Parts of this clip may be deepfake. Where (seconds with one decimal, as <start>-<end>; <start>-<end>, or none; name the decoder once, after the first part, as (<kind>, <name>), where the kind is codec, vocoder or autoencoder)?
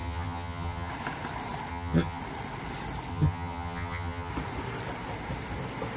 0.0-0.9 (vocoder, HiFi-GAN); 1.7-2.2; 3.1-4.3